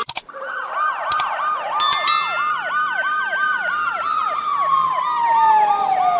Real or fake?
real